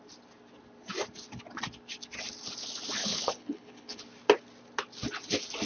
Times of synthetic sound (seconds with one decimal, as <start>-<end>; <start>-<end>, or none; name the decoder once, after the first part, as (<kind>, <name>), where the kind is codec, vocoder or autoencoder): 3.0-4.0 (codec, HILCodec)